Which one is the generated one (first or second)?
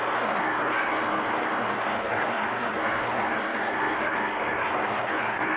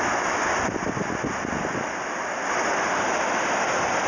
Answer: first